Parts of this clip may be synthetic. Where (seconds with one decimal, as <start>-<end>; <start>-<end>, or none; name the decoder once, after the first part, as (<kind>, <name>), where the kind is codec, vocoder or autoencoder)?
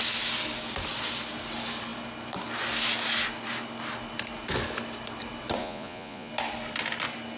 5.6-6.3 (vocoder, Vocos)